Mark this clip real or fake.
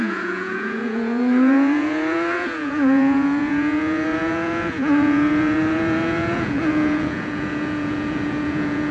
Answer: fake